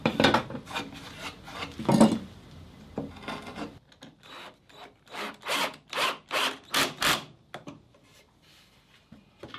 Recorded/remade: recorded